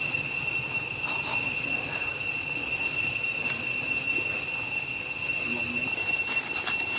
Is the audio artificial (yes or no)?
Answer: no